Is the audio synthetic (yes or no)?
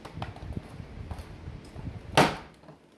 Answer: no